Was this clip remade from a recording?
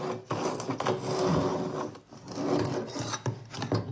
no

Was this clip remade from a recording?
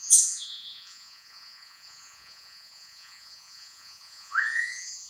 yes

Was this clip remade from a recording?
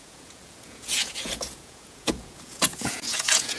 yes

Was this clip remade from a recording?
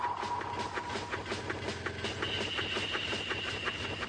no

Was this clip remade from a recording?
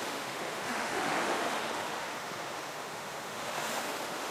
yes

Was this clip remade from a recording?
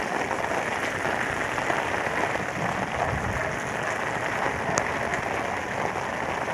no